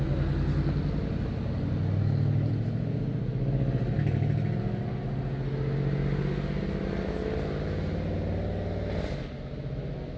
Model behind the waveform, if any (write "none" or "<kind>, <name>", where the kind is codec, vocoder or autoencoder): none